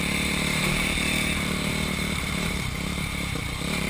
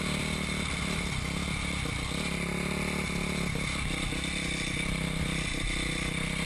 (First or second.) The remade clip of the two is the first